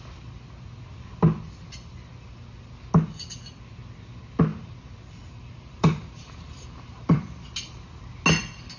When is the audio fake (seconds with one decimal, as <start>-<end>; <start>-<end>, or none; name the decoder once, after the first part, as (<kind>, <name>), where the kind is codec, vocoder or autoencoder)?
4.5-7.5 (vocoder, BigVGAN v2)